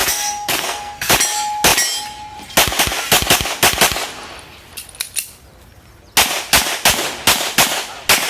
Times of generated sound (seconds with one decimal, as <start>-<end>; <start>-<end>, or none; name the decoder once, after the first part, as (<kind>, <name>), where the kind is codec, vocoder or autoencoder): 0.0-1.1 (codec, SNAC)

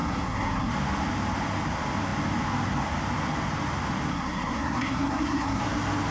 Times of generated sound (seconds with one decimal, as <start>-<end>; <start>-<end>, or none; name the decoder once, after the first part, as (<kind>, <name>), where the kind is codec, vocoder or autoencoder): 0.0-0.7 (codec, SNAC); 4.1-5.6

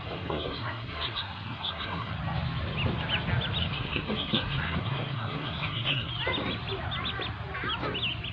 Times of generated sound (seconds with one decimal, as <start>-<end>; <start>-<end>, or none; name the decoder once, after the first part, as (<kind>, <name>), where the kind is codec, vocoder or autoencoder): 0.0-2.2 (codec, SNAC); 3.6-6.1

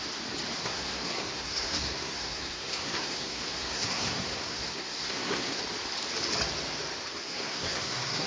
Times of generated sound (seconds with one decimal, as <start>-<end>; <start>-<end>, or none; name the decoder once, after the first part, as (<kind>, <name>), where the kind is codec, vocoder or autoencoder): 0.6-5.6 (codec, SNAC); 7.2-8.3

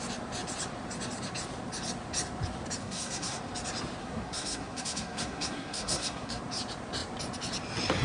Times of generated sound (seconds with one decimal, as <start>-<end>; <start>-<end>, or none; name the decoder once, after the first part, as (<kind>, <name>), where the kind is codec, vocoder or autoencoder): 2.8-3.4 (codec, SNAC); 4.0-6.4

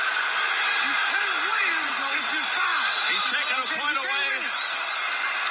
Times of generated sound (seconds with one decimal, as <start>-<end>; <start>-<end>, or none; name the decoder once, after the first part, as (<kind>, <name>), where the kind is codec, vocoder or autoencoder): none